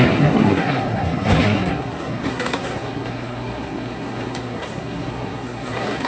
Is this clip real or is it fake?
fake